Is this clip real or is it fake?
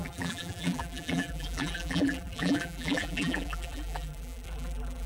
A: fake